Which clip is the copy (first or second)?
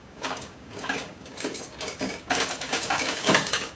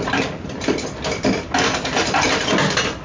first